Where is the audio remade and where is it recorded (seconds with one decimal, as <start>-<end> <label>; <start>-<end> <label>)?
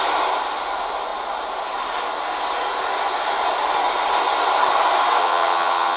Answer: 0.0-5.2 recorded; 5.2-6.0 remade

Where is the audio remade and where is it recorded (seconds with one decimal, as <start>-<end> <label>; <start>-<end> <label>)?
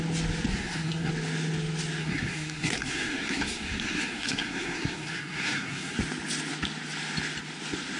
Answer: 0.0-0.5 recorded; 0.5-1.1 remade; 1.1-2.0 recorded; 2.0-6.0 remade; 6.0-8.0 recorded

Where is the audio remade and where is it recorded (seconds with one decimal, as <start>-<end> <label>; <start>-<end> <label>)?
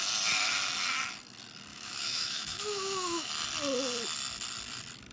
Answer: 0.0-1.7 recorded; 1.7-3.3 remade; 3.3-5.1 recorded